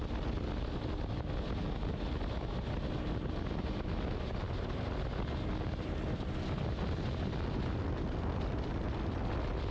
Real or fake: real